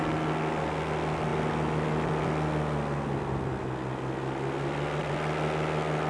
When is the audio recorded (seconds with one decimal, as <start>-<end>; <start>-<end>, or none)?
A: 0.0-6.1